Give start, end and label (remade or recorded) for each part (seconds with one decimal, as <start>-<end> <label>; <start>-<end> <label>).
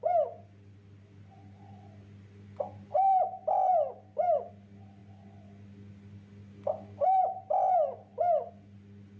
0.0-9.2 recorded